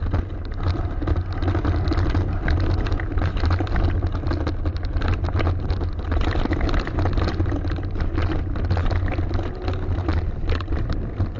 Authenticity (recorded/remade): recorded